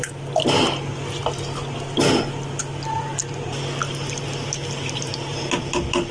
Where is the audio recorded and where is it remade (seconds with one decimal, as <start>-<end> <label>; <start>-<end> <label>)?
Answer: 0.0-6.1 recorded